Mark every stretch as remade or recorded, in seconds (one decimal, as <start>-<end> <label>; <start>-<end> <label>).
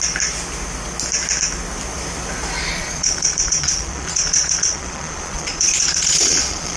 0.0-2.7 recorded; 2.7-6.8 remade